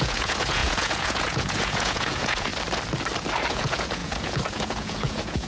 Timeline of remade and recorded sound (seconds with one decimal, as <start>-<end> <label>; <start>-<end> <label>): 0.0-2.5 remade; 2.5-3.5 recorded; 3.5-5.5 remade